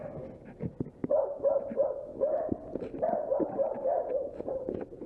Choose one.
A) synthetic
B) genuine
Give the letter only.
B